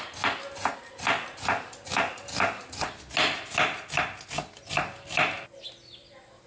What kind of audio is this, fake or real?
real